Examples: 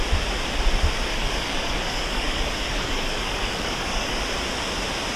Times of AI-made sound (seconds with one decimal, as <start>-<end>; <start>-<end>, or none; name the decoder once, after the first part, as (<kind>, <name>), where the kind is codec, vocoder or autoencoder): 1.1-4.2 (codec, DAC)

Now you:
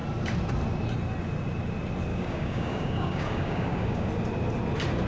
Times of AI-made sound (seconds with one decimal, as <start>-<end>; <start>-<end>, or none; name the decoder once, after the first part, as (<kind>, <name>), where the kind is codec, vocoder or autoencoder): 2.1-4.1 (codec, DAC)

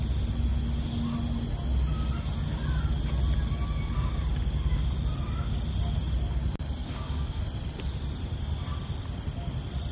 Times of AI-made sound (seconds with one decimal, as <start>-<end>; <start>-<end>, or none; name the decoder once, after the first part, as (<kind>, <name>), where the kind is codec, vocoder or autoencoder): 6.8-7.4 (codec, DAC)

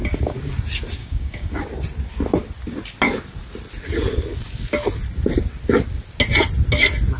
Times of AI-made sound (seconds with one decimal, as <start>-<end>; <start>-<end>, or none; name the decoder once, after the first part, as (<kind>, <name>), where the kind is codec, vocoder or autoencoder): 1.0-1.6 (codec, DAC)

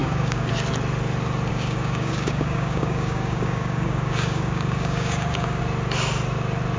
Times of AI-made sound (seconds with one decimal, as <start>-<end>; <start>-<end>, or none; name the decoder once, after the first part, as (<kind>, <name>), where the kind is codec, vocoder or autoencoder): 0.0-0.5 (codec, DAC); 1.5-5.6

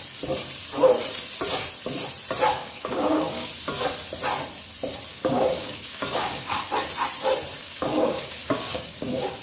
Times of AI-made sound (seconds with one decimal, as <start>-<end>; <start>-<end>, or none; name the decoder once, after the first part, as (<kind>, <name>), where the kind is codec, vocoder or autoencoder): 2.5-3.5 (codec, DAC); 5.1-6.7; 7.6-9.4